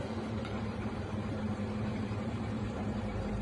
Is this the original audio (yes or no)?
no